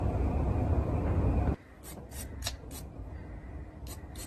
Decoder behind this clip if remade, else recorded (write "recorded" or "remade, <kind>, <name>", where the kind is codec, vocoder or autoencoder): recorded